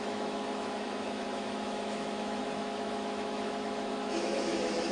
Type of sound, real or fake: fake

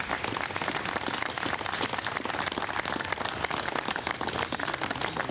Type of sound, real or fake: real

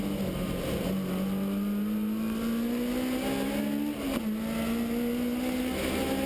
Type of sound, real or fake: real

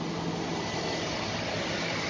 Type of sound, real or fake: real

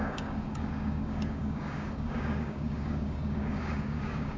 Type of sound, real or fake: fake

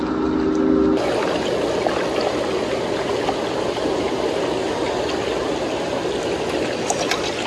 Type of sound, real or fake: real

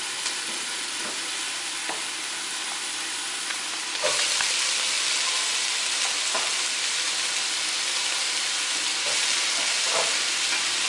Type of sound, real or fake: real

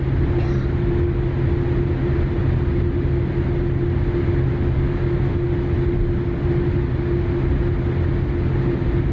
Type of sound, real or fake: real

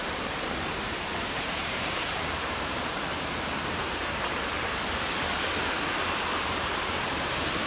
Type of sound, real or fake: fake